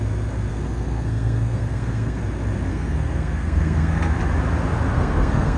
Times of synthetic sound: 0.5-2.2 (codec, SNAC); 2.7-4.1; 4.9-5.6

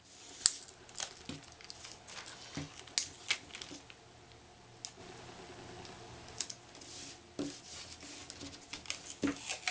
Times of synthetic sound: none

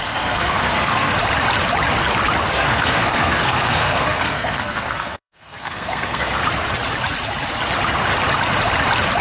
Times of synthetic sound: 0.0-1.1 (codec, SNAC); 2.5-6.4